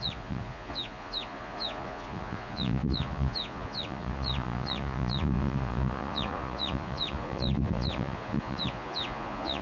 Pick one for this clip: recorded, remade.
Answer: remade